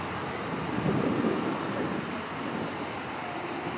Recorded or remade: recorded